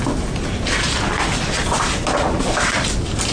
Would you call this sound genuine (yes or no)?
yes